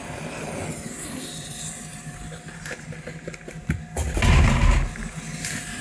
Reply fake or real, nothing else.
real